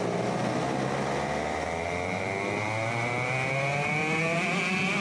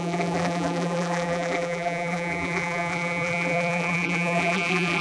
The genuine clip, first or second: first